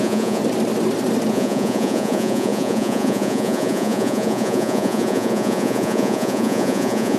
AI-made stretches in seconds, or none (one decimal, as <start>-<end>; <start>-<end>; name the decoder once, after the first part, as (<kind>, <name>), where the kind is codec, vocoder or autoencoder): 0.0-0.4 (vocoder, Vocos); 1.3-7.2